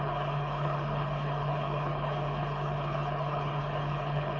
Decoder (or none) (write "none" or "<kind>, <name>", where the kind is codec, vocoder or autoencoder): codec, HILCodec